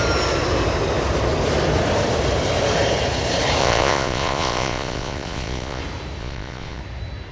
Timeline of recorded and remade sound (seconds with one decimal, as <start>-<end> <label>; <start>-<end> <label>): 0.0-3.6 recorded; 3.6-5.8 remade; 5.8-6.2 recorded; 6.2-6.8 remade; 6.8-7.3 recorded